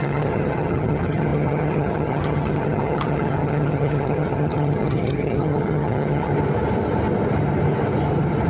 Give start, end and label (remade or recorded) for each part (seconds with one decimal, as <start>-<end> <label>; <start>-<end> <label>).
0.0-6.3 remade; 6.3-8.5 recorded